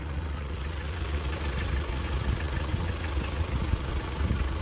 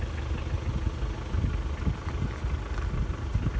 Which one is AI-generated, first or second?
first